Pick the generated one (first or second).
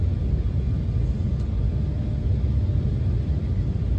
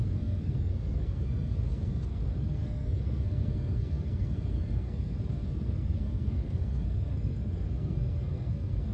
second